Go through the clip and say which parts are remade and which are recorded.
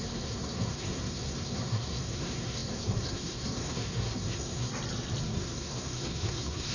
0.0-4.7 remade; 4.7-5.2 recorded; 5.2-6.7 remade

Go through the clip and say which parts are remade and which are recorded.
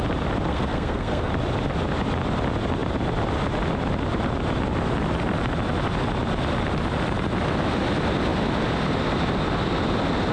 0.0-0.5 recorded; 0.5-1.3 remade; 1.3-10.3 recorded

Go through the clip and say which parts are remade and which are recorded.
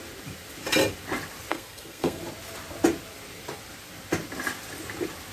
0.0-1.5 recorded; 1.5-2.2 remade; 2.2-5.3 recorded